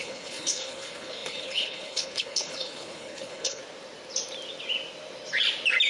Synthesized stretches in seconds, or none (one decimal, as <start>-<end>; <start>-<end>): 0.0-3.6